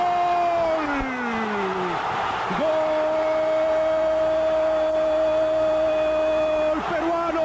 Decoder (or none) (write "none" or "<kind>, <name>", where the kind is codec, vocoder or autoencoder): none